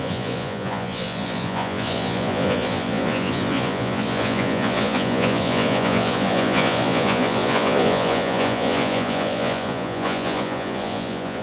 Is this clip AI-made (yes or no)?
yes